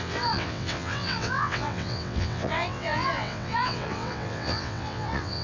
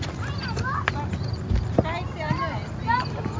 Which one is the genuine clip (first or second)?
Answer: second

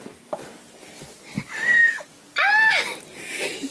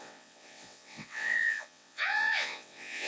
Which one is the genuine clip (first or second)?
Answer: first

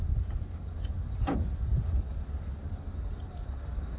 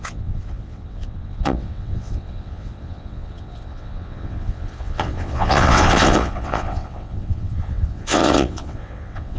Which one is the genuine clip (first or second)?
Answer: first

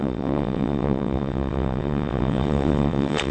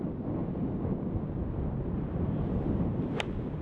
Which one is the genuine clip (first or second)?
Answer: second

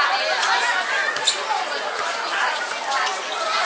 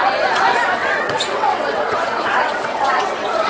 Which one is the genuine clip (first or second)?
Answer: first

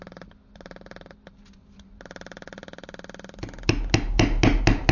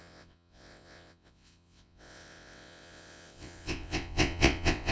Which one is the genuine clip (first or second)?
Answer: first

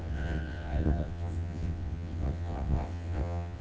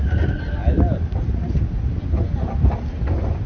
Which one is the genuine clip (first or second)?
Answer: second